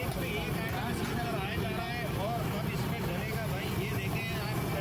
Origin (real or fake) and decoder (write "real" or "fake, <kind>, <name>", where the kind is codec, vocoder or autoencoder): real